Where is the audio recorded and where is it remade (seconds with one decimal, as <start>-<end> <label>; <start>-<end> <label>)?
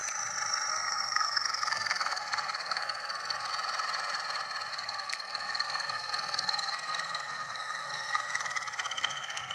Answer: 0.0-0.7 recorded; 0.7-3.5 remade; 3.5-4.7 recorded; 4.7-9.5 remade